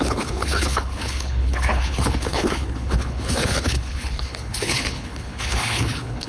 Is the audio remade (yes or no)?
yes